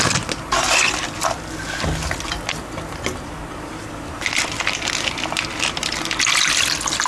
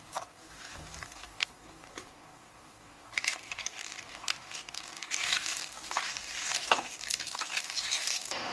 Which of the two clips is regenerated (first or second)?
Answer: second